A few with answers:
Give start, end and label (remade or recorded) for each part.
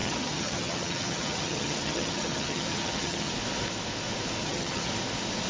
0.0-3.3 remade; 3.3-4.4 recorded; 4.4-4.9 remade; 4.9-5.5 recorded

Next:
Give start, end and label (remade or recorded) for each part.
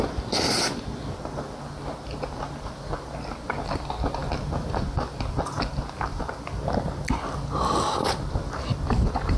0.0-9.4 recorded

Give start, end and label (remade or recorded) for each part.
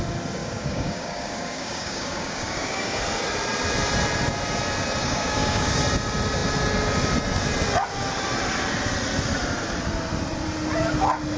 0.0-0.4 recorded; 0.4-3.0 remade; 3.0-5.0 recorded; 5.0-5.8 remade; 5.8-11.4 recorded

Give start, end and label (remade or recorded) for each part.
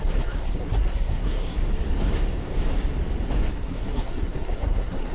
0.0-1.6 remade; 1.6-3.5 recorded; 3.5-5.1 remade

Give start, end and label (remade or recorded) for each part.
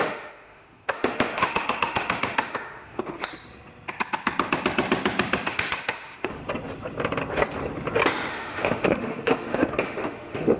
0.0-3.3 remade; 3.3-5.5 recorded; 5.5-6.4 remade; 6.4-8.3 recorded; 8.3-10.6 remade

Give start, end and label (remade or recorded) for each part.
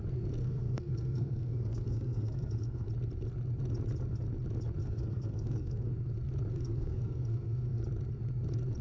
0.0-0.4 recorded; 0.4-2.9 remade; 2.9-4.8 recorded; 4.8-5.9 remade; 5.9-6.5 recorded; 6.5-7.8 remade; 7.8-8.8 recorded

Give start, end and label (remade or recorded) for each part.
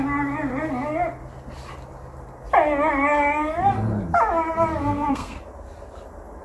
0.0-4.8 recorded; 4.8-5.4 remade; 5.4-6.4 recorded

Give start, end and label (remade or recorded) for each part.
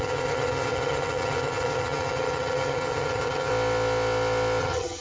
0.0-3.5 remade; 3.5-4.6 recorded; 4.6-5.0 remade